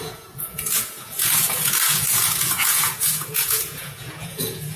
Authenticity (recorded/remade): remade